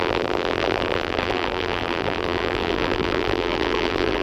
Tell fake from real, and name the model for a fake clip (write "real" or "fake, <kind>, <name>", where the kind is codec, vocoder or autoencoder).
fake, vocoder, BigVGAN v2